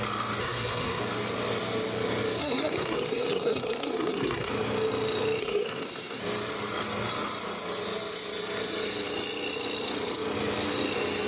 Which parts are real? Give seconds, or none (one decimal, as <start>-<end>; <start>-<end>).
0.0-0.4; 1.0-2.4; 4.5-5.4; 6.2-11.3